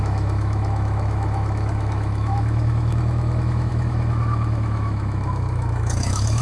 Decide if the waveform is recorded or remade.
remade